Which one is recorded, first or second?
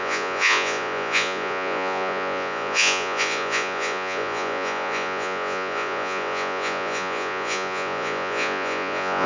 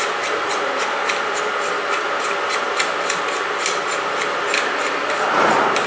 second